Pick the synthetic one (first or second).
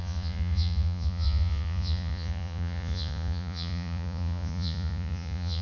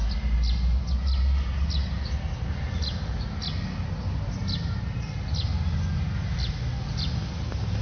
first